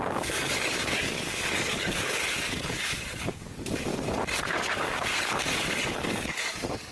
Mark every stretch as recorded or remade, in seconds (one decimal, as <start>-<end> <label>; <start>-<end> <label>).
0.0-3.9 remade; 3.9-4.4 recorded; 4.4-6.9 remade